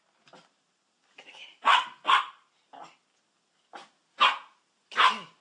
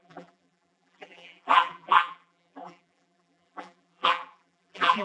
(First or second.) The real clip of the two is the first